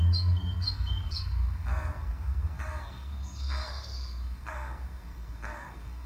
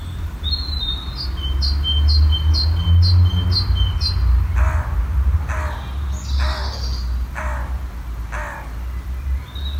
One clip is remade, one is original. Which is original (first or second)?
second